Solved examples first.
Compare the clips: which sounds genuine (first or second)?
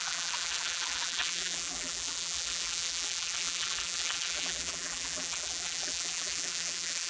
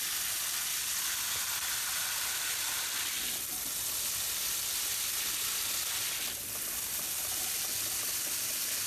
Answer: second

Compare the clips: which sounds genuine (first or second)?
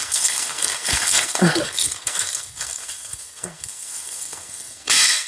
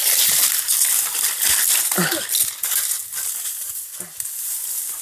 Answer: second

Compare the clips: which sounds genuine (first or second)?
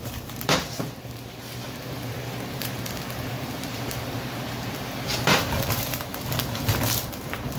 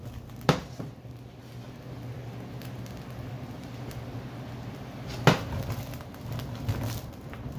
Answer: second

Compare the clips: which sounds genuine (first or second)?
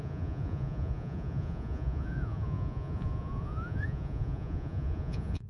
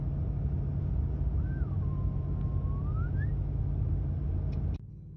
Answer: second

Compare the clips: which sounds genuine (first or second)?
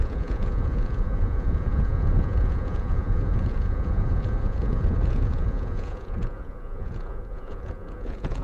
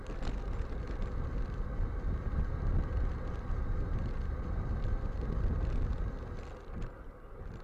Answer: second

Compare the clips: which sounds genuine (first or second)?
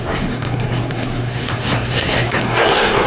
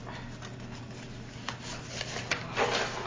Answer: second